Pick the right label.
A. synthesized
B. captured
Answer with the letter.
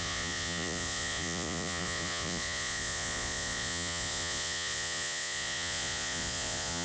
A